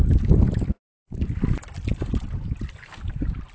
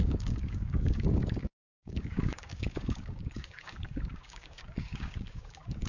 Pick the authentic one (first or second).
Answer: first